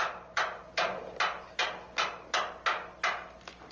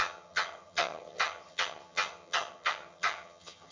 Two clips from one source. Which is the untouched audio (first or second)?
first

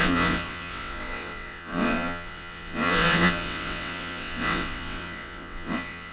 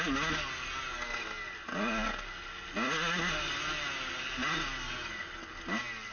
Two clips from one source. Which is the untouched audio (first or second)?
second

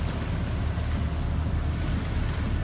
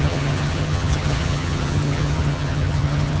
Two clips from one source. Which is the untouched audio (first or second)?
first